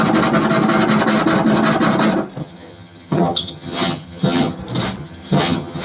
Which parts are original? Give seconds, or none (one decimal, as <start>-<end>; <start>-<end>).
0.0-2.4; 4.6-5.0